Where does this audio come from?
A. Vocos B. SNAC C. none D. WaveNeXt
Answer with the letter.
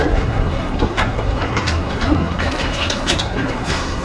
B